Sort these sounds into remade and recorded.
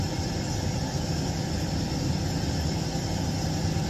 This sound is recorded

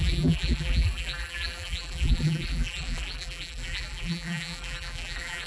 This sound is remade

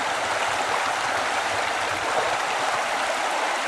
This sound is recorded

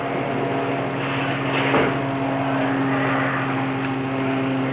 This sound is recorded